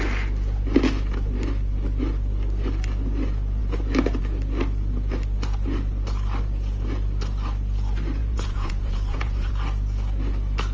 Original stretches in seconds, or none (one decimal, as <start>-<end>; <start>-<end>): 0.0-8.2; 9.5-10.7